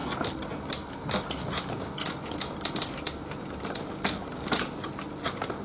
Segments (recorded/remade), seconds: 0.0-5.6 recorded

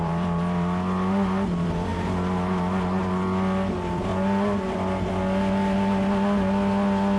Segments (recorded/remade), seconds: 0.0-1.9 remade; 1.9-3.0 recorded; 3.0-4.1 remade; 4.1-7.2 recorded

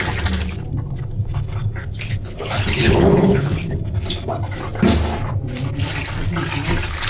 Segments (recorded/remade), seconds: 0.0-1.8 recorded; 1.8-3.8 remade; 3.8-7.1 recorded

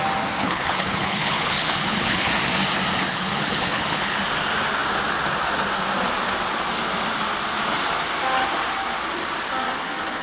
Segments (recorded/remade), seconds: 0.0-0.4 recorded; 0.4-2.3 remade; 2.3-3.1 recorded; 3.1-4.2 remade; 4.2-10.2 recorded

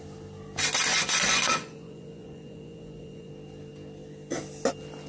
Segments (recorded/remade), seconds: 0.0-0.9 recorded; 0.9-3.3 remade; 3.3-5.1 recorded

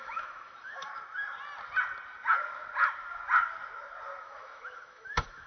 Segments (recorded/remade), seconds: 0.0-0.9 remade; 0.9-4.2 recorded; 4.2-5.5 remade

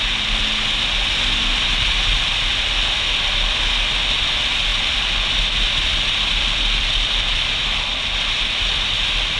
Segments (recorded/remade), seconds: 0.0-9.4 recorded